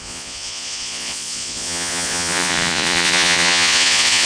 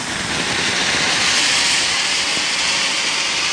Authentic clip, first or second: second